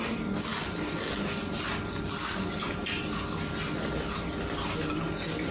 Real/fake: real